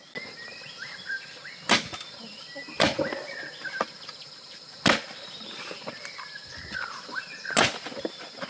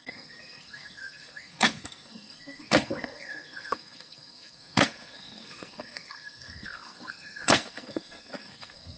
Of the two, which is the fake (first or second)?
second